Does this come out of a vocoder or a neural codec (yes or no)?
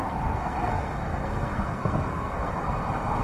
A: yes